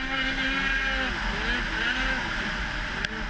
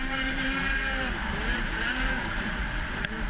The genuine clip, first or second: first